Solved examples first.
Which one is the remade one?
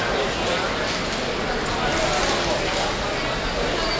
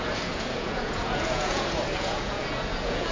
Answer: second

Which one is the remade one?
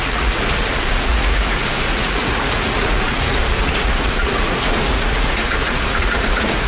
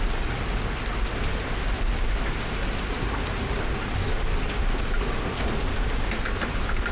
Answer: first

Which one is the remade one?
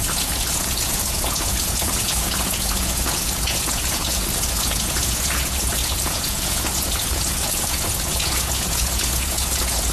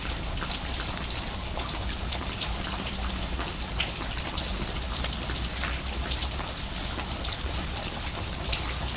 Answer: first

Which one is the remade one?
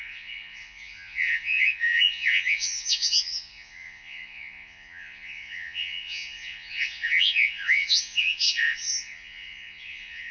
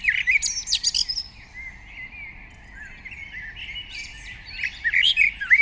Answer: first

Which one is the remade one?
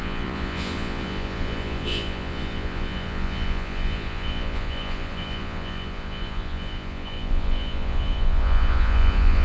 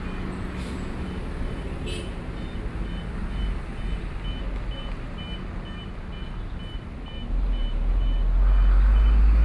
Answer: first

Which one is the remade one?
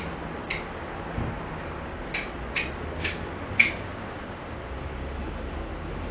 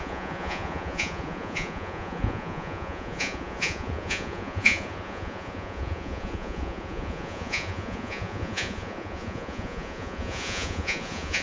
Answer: second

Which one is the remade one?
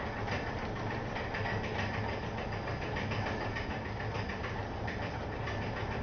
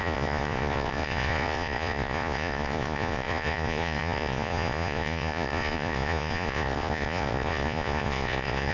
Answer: second